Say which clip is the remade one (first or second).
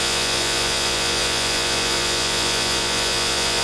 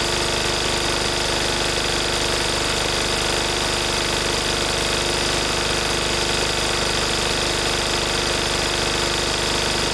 first